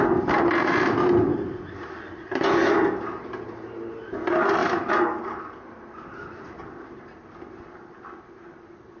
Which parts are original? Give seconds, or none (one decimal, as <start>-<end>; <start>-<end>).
0.0-9.0

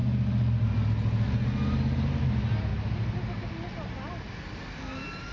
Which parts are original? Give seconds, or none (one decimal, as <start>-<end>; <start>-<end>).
0.0-5.3